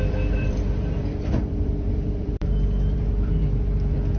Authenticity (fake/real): fake